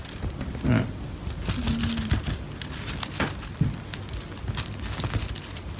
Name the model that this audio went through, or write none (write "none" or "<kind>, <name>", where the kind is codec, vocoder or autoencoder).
none